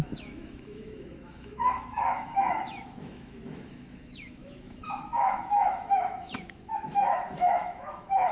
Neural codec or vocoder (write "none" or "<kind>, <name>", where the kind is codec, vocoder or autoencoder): autoencoder, DAC-VAE